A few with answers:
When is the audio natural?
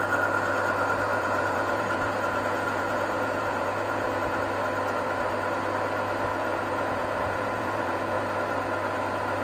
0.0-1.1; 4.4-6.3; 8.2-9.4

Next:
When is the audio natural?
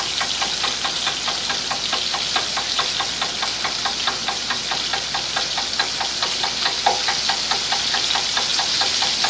0.0-9.3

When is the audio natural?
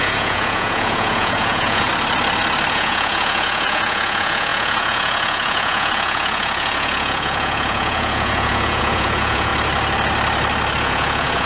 1.9-2.7; 9.5-10.8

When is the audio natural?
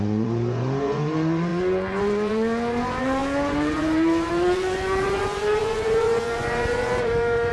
none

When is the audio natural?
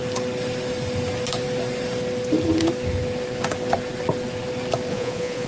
0.0-4.9